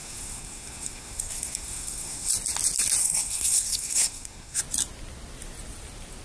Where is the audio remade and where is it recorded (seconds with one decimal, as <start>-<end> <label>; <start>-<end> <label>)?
0.0-2.3 remade; 2.3-3.0 recorded; 3.0-4.6 remade; 4.6-6.2 recorded